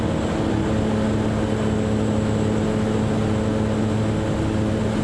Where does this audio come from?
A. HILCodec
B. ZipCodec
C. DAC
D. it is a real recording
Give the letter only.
D